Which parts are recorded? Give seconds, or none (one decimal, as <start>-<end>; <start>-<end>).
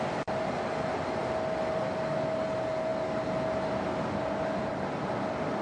0.0-5.6